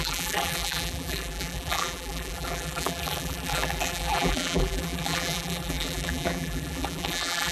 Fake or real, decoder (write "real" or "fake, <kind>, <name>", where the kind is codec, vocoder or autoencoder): fake, vocoder, BigVGAN v2